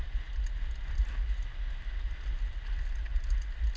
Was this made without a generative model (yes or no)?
yes